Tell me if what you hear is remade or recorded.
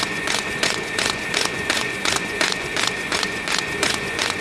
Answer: remade